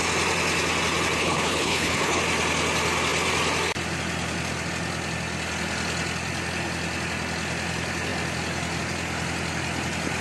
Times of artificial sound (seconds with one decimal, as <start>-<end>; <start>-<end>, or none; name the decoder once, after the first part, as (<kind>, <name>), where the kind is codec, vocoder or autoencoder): 1.2-2.2 (codec, HILCodec)